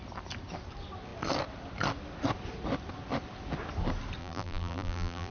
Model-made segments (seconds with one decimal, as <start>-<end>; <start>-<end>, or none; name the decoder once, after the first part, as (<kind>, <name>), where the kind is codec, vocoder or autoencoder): 4.2-5.3 (vocoder, BigVGAN v2)